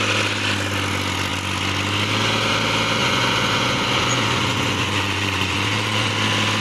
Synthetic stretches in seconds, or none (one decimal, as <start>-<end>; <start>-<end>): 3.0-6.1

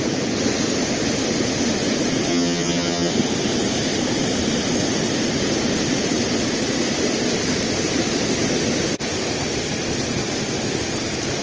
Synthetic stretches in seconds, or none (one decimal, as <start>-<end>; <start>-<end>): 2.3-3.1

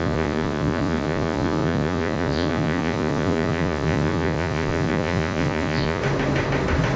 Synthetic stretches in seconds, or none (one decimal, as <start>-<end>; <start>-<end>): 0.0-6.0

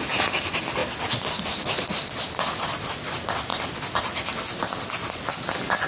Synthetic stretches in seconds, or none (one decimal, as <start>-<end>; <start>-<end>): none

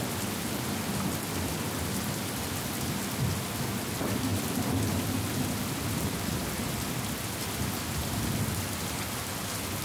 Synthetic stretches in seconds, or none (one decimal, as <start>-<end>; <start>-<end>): none

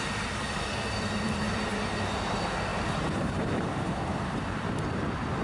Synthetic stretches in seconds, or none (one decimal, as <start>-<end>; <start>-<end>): 2.7-4.8